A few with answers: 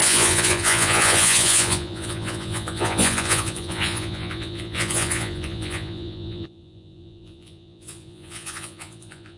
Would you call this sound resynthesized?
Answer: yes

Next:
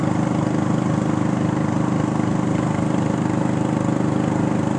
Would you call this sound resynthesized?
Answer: no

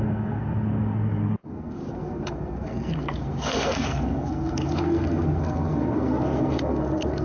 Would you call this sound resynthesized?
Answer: yes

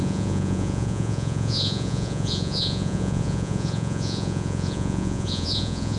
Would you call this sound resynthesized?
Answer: yes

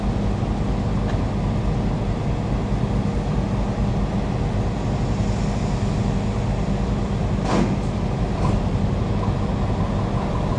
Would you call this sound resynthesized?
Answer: no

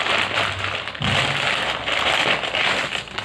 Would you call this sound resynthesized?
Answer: no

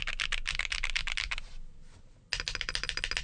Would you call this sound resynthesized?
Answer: no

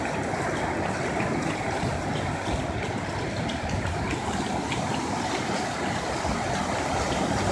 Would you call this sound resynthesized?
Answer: no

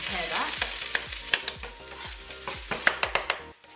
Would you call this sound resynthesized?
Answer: no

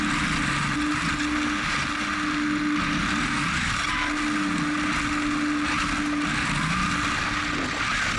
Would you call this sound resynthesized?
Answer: no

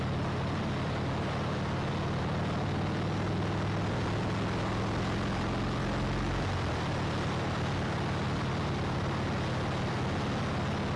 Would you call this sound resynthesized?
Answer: no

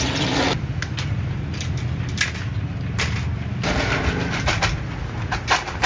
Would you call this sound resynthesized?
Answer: no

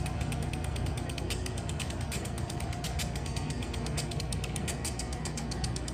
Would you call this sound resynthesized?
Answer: yes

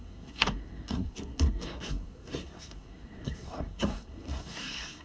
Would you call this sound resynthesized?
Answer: yes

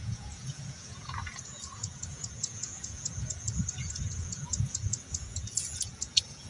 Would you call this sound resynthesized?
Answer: yes